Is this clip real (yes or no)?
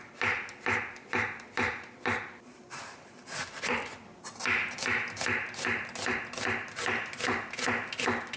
yes